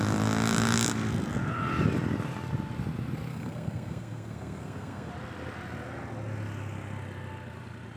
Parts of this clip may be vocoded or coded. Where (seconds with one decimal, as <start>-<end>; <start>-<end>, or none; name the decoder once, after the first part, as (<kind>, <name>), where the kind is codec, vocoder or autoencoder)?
3.3-5.1 (codec, SNAC)